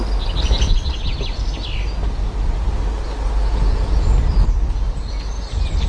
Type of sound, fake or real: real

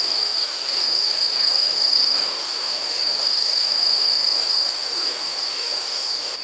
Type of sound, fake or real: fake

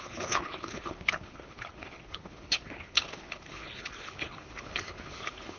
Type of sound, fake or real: fake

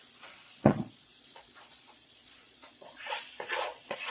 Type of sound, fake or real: fake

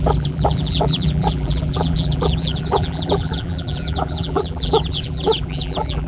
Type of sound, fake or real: fake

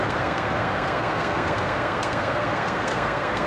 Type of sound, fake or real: fake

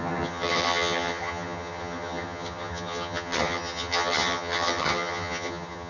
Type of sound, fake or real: fake